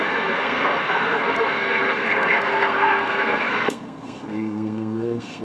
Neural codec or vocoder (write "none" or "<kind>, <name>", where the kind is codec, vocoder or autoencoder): codec, SNAC